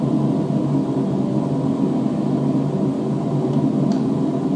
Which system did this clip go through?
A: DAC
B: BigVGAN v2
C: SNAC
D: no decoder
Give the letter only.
D